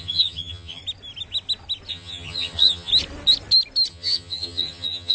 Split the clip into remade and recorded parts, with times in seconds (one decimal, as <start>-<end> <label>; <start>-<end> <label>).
0.0-0.8 remade; 0.8-1.9 recorded; 1.9-2.9 remade; 2.9-3.9 recorded; 3.9-5.1 remade